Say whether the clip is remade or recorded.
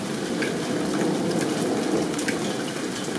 recorded